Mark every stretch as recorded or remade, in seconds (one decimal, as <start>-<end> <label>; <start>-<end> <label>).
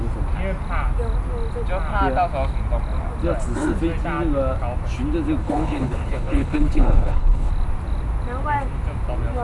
0.0-5.4 recorded; 5.4-7.5 remade; 7.5-9.4 recorded